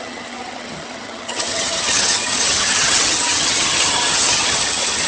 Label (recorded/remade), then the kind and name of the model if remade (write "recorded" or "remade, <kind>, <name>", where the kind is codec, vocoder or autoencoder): remade, vocoder, HiFi-GAN